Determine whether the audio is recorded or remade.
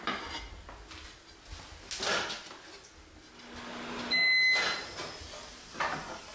recorded